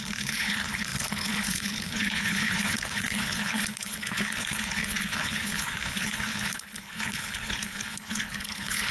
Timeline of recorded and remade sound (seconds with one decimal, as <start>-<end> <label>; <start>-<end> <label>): 0.0-8.9 remade